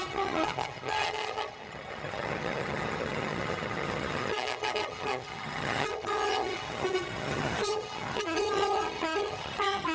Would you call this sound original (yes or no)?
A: no